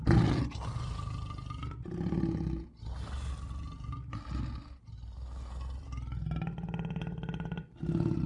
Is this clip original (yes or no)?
yes